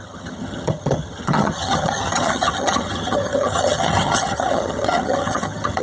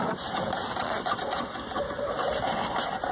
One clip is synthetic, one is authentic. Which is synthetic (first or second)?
first